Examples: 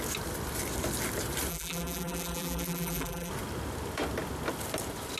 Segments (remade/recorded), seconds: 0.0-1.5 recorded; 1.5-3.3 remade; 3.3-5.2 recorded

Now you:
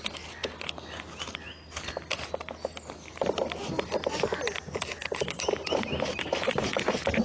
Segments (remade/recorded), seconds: 0.0-5.0 recorded; 5.0-5.7 remade; 5.7-7.2 recorded